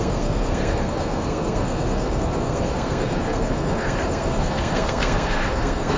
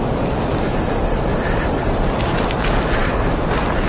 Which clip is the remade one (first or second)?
first